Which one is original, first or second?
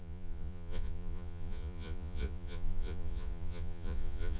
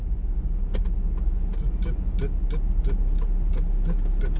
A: second